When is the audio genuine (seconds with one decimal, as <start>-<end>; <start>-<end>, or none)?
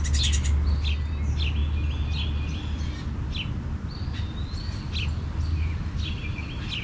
0.0-6.8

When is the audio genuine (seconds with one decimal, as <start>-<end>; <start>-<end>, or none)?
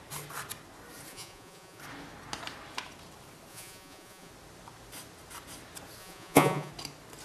0.0-1.1; 1.8-3.5; 4.3-6.0; 6.7-7.2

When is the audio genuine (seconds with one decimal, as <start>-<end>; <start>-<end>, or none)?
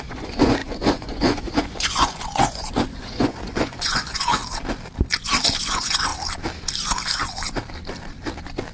4.4-5.6; 6.1-8.7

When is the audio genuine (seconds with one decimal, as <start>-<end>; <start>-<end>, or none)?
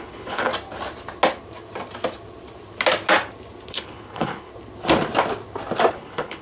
0.5-3.7; 4.5-5.9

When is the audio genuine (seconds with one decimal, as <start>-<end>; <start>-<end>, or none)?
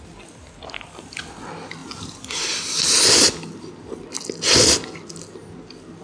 0.0-6.0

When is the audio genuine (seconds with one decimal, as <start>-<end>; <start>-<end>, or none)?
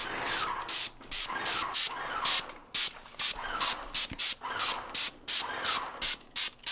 0.0-6.7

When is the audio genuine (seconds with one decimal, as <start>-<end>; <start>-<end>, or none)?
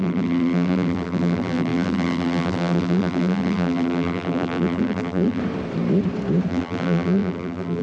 5.4-6.5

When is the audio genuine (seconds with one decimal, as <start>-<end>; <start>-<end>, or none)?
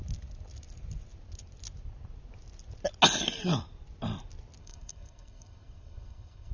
0.0-4.6